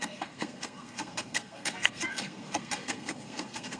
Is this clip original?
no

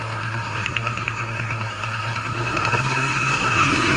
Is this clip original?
no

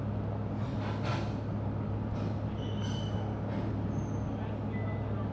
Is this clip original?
yes